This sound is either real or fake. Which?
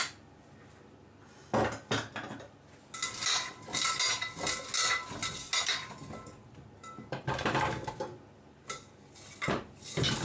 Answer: real